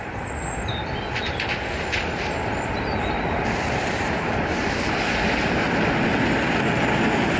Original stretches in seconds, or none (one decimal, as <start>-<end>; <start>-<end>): 0.0-3.8; 4.8-7.4

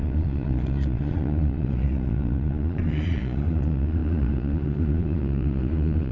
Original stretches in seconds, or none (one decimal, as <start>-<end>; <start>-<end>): none

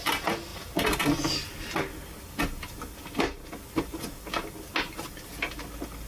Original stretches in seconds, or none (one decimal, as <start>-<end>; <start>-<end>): 0.0-6.1

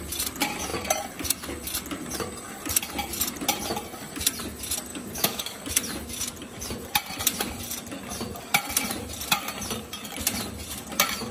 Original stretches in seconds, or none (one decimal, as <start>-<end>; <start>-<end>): 0.0-4.9; 5.6-11.3

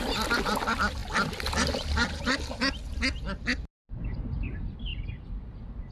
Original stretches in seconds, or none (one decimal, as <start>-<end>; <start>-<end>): 0.0-5.9

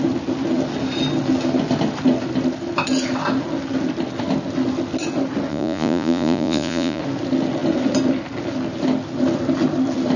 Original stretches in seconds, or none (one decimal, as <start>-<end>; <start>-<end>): 0.0-5.5; 7.0-10.2

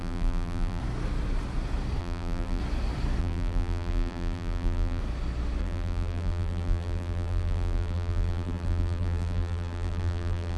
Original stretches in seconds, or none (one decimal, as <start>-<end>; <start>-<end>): 0.8-2.0; 2.6-3.2; 5.0-5.6